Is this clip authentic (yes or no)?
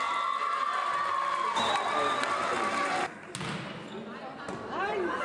yes